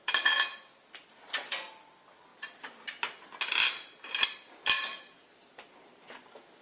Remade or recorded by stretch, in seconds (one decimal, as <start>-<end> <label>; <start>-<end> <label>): 0.0-2.3 recorded; 2.3-2.8 remade; 2.8-4.2 recorded; 4.2-5.5 remade; 5.5-6.6 recorded